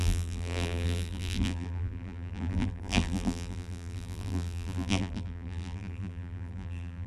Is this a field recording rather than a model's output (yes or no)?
no